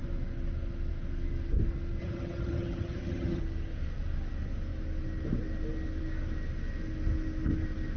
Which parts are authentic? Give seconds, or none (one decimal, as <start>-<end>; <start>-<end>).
0.0-2.0; 3.4-8.0